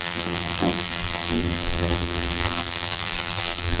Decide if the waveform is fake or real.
fake